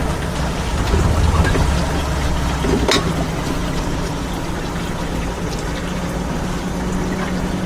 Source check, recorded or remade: recorded